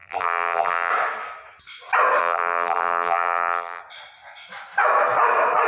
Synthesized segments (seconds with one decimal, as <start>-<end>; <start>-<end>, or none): 0.0-0.9; 2.2-3.8

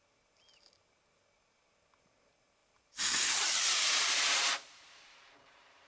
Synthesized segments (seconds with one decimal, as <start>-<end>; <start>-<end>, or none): 2.6-5.9

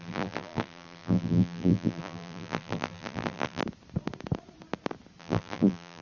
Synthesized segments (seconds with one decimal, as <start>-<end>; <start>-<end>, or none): 0.0-3.6; 5.2-6.0

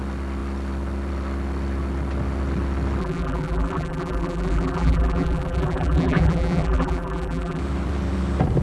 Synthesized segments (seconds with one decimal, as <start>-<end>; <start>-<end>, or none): 3.0-7.6

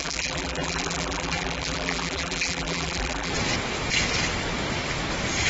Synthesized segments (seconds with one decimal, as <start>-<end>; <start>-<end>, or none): 0.0-3.3

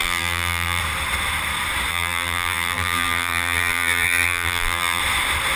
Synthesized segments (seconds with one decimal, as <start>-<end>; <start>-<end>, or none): 0.0-0.8; 1.9-5.0